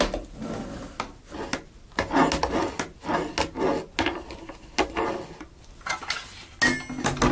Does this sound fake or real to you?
real